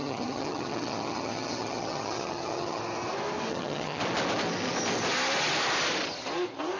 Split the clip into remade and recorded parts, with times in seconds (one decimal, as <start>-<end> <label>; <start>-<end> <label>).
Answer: 0.0-2.8 remade; 2.8-3.5 recorded; 3.5-4.0 remade; 4.0-6.8 recorded